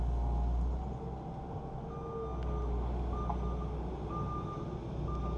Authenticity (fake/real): real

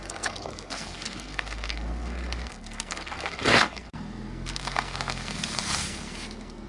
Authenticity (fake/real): fake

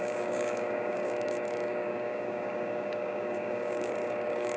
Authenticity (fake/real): fake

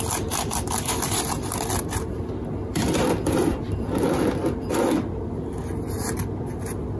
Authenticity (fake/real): fake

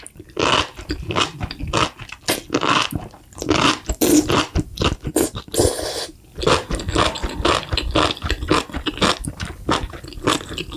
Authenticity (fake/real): real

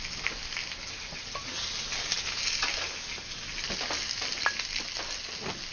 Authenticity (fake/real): real